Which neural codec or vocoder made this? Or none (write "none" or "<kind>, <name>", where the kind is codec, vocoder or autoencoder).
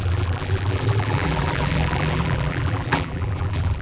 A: vocoder, BigVGAN v2